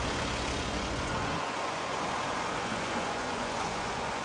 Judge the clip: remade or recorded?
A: remade